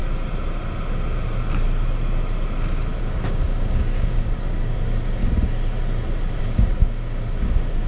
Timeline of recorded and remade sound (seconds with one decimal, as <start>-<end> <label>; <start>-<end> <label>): 0.0-3.0 recorded; 3.0-5.2 remade; 5.2-6.4 recorded; 6.4-7.9 remade